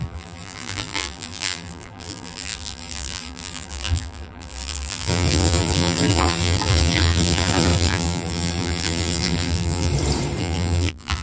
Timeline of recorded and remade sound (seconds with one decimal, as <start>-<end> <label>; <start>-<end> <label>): 0.0-9.9 remade; 9.9-10.4 recorded; 10.4-11.2 remade